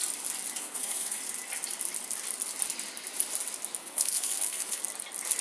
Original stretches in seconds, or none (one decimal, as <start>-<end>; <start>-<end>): 0.0-0.6; 1.2-3.8; 4.8-5.4